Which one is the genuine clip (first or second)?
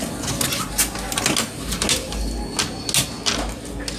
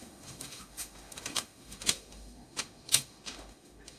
first